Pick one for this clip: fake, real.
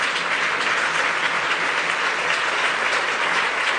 real